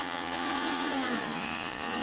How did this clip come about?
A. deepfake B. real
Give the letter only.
A